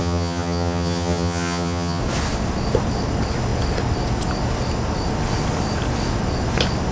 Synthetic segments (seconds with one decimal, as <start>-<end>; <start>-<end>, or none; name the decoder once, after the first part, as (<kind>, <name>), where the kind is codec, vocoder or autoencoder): 0.0-2.0 (vocoder, HiFi-GAN)